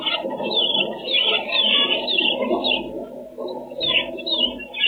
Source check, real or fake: fake